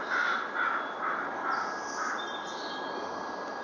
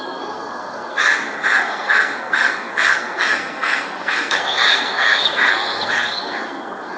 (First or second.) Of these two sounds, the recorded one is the first